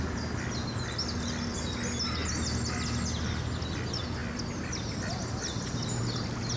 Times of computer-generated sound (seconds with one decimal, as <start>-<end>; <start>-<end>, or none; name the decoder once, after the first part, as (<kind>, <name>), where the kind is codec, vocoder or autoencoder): none